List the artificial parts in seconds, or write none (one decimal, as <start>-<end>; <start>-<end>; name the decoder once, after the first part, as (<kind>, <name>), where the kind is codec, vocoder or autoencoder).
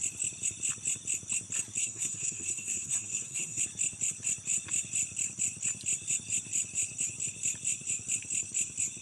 1.8-3.6 (codec, SNAC)